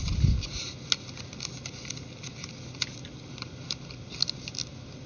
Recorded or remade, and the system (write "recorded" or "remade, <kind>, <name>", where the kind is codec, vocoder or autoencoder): recorded